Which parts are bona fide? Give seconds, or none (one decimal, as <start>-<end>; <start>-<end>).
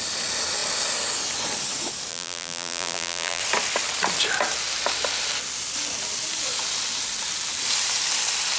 0.0-2.1; 3.4-8.6